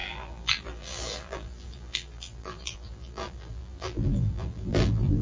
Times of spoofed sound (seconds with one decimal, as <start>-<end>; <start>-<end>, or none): 0.0-5.2